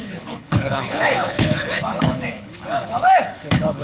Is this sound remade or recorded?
remade